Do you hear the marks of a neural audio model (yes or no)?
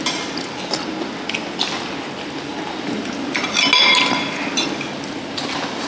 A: no